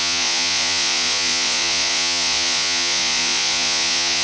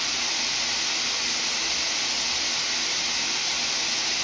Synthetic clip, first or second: first